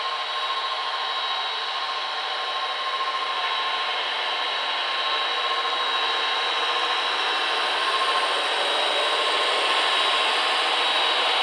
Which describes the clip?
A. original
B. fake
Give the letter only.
A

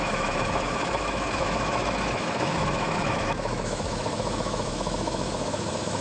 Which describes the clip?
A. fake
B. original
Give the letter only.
A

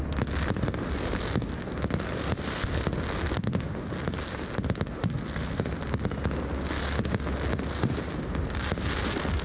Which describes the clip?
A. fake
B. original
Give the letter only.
B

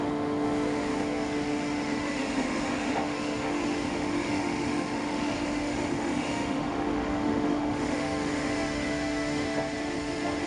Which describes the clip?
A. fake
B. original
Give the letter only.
A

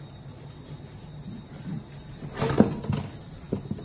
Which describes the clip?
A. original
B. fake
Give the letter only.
A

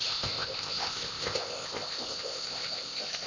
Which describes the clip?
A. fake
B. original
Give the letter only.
A